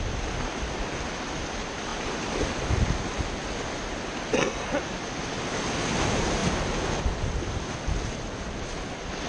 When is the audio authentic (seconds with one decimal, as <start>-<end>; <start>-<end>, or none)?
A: 0.0-9.3